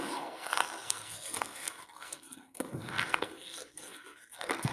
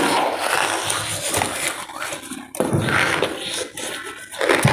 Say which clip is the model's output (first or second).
first